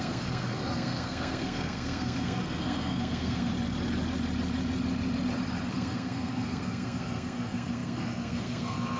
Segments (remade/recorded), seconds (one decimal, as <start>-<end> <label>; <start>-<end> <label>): 0.0-3.5 remade; 3.5-5.7 recorded; 5.7-9.0 remade